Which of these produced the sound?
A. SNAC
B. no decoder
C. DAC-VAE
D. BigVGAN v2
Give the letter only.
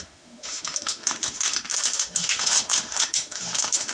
C